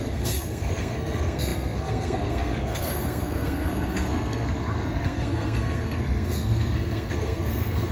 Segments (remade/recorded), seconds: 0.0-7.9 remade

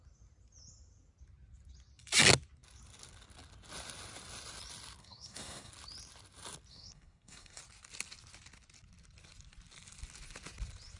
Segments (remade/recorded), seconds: 0.0-5.0 recorded; 5.0-5.7 remade; 5.7-6.7 recorded; 6.7-7.6 remade; 7.6-11.0 recorded

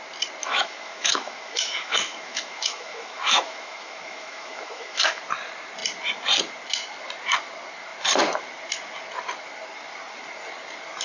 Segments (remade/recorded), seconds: 0.0-0.4 recorded; 0.4-5.2 remade; 5.2-11.0 recorded

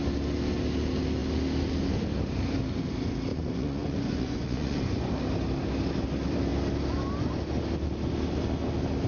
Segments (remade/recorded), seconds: 0.0-3.3 recorded; 3.3-5.1 remade; 5.1-9.1 recorded